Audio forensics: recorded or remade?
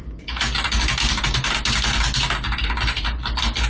recorded